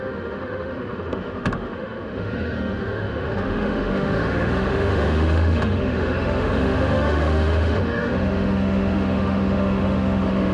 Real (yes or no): no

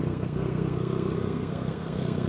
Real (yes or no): no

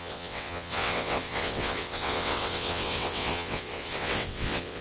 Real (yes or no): no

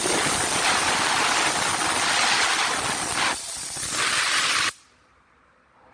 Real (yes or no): yes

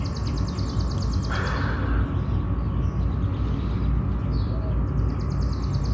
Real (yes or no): yes